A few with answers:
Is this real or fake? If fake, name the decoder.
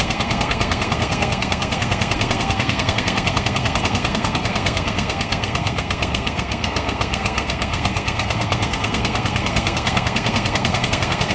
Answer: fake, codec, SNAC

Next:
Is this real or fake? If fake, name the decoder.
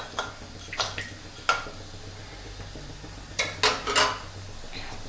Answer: real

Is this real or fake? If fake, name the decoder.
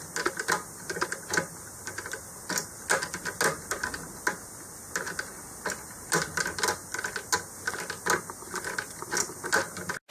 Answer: real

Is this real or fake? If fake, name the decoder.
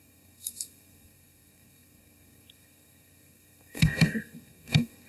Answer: fake, codec, SNAC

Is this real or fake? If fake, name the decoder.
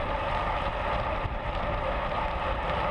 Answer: real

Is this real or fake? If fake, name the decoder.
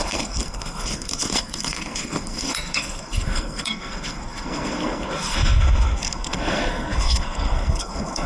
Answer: fake, codec, SNAC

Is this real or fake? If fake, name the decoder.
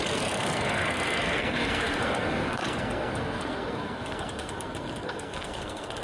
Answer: fake, codec, SNAC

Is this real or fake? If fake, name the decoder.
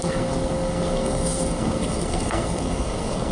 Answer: fake, codec, SNAC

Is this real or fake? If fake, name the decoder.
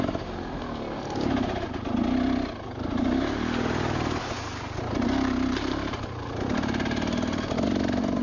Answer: real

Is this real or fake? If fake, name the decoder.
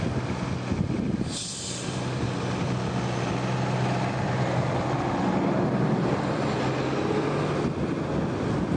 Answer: real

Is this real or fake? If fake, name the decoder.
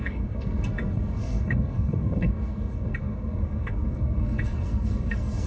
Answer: fake, codec, SNAC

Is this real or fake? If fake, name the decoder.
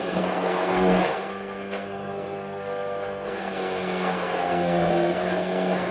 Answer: fake, codec, SNAC